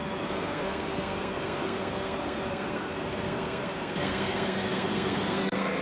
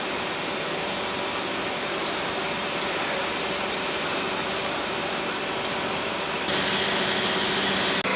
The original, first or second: second